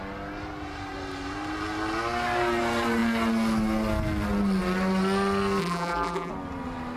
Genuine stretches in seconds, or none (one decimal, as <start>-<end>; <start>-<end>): 0.0-5.6; 6.3-7.0